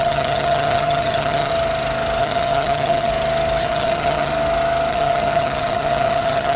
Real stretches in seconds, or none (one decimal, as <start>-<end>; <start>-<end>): 1.5-2.2; 3.1-3.6; 4.3-4.9